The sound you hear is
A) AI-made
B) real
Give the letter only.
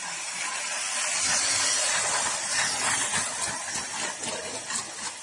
B